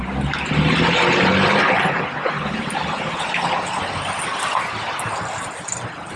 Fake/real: real